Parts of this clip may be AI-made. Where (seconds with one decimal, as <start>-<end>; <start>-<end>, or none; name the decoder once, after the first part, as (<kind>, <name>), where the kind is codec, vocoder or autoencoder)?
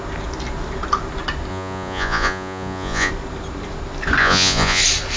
1.5-3.1 (vocoder, Vocos); 4.2-4.8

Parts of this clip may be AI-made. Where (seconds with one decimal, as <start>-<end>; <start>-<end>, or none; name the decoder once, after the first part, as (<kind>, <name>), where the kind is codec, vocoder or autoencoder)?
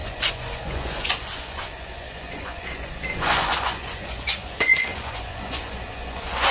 0.0-6.5 (vocoder, Vocos)